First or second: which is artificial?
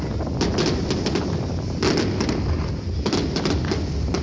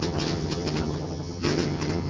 second